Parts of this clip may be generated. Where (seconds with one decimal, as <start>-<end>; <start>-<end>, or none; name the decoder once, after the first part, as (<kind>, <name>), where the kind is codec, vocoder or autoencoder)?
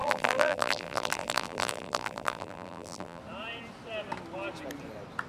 0.0-3.2 (vocoder, BigVGAN v2)